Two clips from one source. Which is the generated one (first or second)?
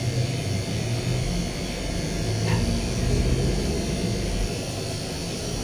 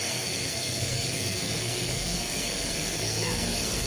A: second